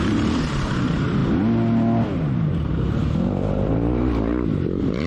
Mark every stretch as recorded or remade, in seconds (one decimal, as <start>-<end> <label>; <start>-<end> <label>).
0.0-1.2 remade; 1.2-2.7 recorded; 2.7-5.1 remade